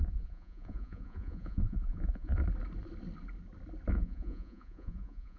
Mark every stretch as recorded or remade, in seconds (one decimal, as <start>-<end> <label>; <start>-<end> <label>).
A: 0.0-2.4 remade; 2.4-3.9 recorded; 3.9-5.4 remade